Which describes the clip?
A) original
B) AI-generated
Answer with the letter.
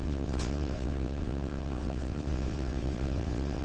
B